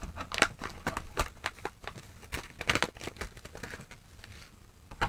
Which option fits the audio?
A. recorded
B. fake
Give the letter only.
A